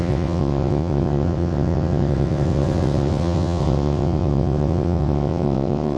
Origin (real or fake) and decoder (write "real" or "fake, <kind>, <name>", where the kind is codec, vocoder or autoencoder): fake, vocoder, WaveNeXt